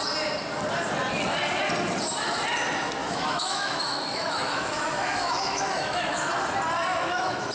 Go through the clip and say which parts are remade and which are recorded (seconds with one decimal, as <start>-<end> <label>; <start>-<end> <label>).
0.0-3.0 recorded; 3.0-6.3 remade; 6.3-6.9 recorded; 6.9-7.5 remade